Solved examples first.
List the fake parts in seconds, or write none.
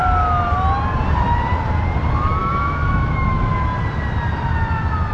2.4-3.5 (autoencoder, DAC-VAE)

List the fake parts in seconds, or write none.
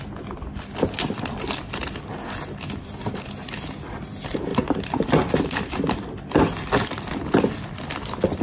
none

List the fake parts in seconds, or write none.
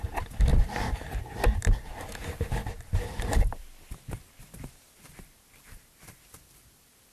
none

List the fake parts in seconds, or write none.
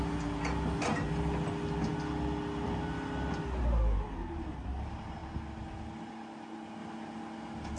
none